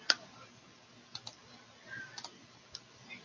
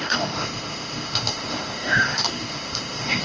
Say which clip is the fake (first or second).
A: second